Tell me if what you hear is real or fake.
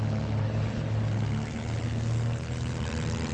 real